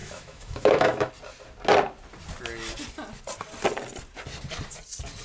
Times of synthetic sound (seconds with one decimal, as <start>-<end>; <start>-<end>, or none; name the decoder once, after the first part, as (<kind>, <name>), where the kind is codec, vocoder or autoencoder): 0.0-1.1 (autoencoder, DAC-VAE)